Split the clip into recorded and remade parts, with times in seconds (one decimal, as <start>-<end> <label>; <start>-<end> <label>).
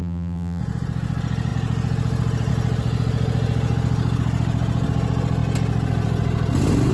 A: 0.0-0.6 remade; 0.6-6.9 recorded